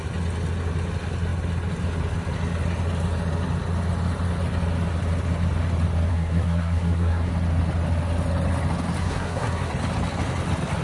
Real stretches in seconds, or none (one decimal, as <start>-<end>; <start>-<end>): 0.0-6.1; 7.3-9.0; 9.7-10.8